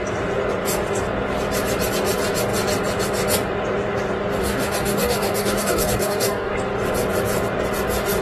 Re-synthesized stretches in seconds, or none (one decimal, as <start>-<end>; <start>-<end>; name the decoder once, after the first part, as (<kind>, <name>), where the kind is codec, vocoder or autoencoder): 4.4-6.5 (codec, DAC)